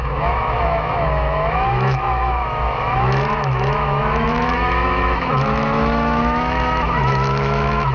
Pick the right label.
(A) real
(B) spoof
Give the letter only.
B